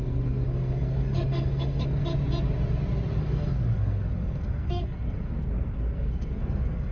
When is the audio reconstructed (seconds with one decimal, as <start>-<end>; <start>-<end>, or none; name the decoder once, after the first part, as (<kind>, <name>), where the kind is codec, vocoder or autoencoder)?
0.0-2.1 (codec, SNAC); 3.2-6.9